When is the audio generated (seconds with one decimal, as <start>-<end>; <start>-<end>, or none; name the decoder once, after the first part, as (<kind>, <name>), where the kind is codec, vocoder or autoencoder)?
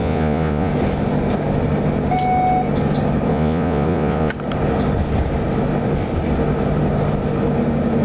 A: 0.0-0.7 (vocoder, Vocos); 3.3-4.3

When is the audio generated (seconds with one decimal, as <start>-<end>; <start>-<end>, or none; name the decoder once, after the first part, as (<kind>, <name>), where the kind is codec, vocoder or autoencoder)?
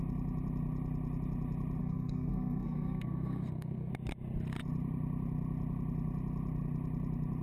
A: 1.8-3.9 (codec, SNAC)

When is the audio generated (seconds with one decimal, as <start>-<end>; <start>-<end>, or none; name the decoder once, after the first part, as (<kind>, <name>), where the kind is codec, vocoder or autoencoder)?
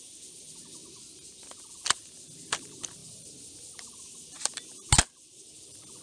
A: 3.0-4.2 (vocoder, BigVGAN v2)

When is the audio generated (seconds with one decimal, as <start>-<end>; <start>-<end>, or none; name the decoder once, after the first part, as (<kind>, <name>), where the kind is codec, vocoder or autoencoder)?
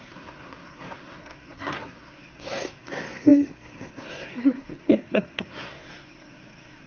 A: 0.0-6.9 (codec, SNAC)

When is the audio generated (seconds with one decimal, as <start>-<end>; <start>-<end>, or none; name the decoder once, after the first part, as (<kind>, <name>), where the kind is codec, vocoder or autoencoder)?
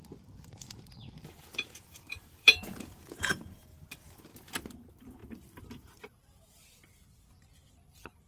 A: 1.3-3.8 (vocoder, Vocos)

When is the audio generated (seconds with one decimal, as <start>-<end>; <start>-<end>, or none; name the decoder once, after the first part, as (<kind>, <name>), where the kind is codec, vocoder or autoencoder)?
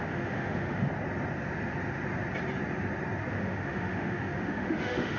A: 0.0-0.9 (autoencoder, DAC-VAE); 3.3-5.2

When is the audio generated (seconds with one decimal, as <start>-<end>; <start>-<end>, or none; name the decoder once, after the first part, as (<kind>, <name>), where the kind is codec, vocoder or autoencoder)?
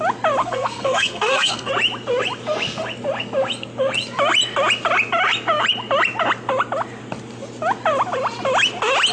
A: 0.4-1.7 (codec, SNAC)